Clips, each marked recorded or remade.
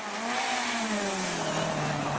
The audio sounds recorded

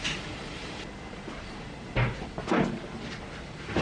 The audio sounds recorded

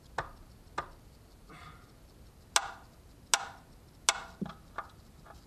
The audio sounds recorded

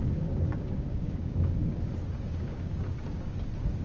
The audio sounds remade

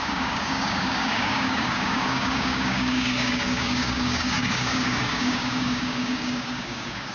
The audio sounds remade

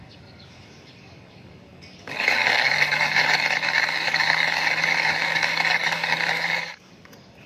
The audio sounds remade